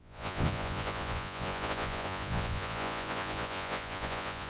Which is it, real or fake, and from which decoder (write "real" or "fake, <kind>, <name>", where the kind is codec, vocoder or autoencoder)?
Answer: fake, vocoder, Vocos